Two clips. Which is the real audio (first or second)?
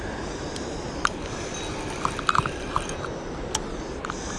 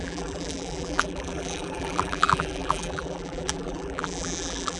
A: first